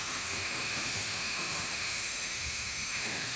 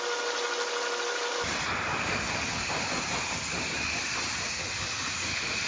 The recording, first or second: second